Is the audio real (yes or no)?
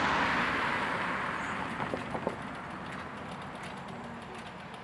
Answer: yes